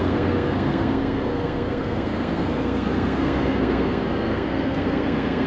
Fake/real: fake